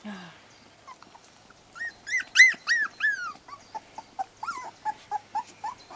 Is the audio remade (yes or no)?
no